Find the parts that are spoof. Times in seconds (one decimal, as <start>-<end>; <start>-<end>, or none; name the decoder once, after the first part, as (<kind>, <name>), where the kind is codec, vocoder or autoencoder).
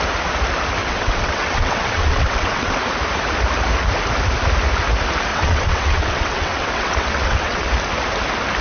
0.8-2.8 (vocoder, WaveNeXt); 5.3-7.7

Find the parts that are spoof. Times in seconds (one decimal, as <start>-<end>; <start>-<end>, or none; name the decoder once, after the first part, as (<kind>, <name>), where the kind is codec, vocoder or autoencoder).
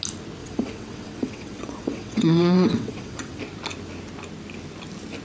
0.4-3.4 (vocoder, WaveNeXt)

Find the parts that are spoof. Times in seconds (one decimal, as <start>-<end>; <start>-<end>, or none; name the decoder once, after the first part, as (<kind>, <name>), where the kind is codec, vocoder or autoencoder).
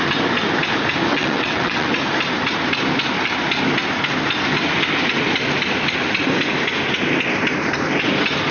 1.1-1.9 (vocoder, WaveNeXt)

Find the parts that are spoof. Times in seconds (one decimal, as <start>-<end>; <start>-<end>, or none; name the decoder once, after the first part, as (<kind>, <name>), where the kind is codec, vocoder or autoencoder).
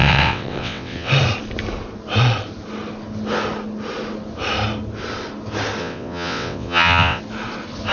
0.0-1.1 (vocoder, WaveNeXt); 5.8-7.2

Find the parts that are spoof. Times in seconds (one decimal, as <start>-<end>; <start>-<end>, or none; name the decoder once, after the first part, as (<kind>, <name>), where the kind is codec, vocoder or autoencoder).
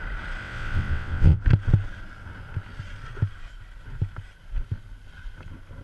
0.4-1.4 (vocoder, WaveNeXt)